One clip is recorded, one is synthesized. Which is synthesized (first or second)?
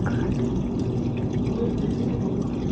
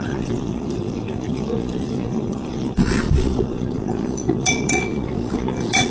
second